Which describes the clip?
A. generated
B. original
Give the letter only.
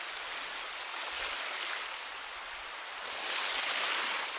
B